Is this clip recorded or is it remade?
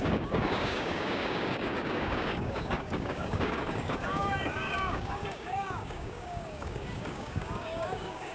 remade